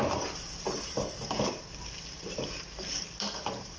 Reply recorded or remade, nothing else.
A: recorded